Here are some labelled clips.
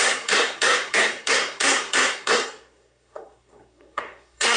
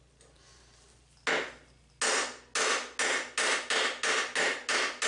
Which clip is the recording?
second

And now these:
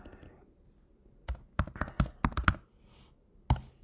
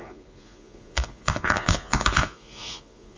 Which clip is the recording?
first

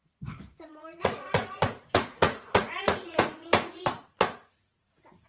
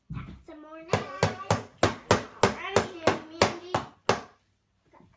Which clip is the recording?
second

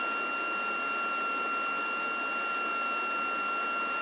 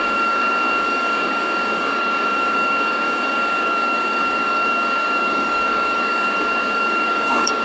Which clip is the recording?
first